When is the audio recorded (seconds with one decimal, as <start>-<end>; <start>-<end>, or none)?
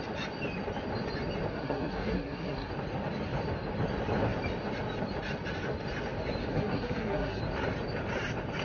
0.0-1.5; 2.7-6.5; 7.4-8.6